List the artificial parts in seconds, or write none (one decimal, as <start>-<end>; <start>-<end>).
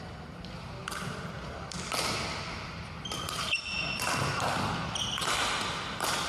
none